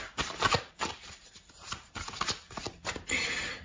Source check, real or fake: real